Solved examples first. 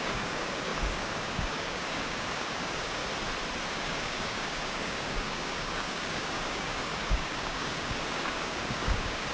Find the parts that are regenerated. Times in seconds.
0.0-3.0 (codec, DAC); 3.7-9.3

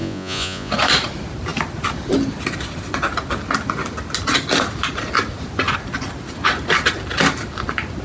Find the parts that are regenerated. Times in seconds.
0.0-0.7 (vocoder, Vocos)

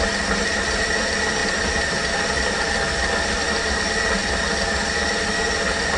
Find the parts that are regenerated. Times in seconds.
none

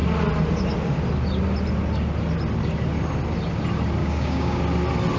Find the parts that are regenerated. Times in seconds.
4.0-4.6 (codec, DAC)

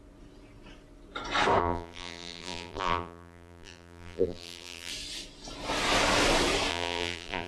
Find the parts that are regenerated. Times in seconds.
1.6-4.9 (vocoder, BigVGAN v2); 6.7-7.5